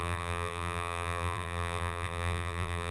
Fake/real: fake